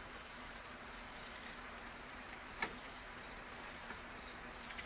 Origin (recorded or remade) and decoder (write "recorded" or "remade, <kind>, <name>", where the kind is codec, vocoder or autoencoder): remade, vocoder, BigVGAN v2